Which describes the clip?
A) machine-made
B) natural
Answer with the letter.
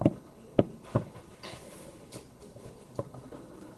A